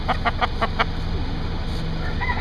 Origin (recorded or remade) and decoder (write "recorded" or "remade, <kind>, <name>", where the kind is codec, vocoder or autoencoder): recorded